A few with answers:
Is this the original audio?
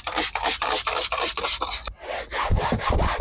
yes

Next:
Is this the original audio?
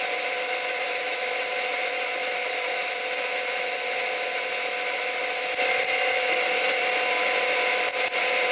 yes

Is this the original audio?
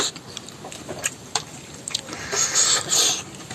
yes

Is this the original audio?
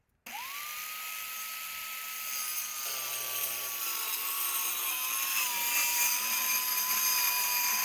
yes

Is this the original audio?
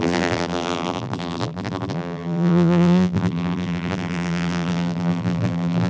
no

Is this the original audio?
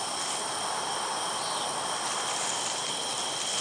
yes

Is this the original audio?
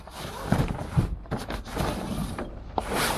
yes